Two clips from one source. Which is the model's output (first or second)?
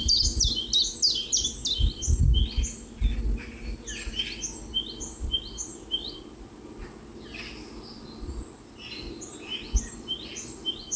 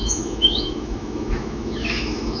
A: second